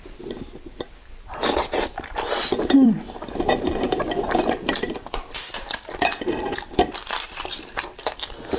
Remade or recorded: remade